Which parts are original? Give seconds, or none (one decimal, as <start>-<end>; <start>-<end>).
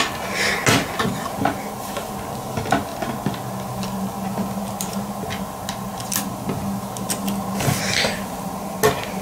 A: 0.0-9.2